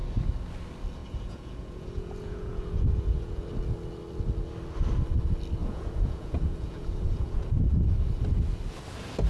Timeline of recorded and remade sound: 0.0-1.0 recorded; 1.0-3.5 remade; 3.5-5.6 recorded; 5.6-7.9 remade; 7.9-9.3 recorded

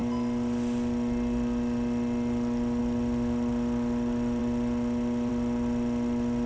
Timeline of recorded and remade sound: 0.0-6.5 recorded